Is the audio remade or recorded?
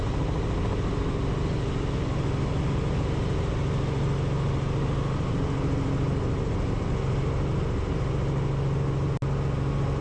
recorded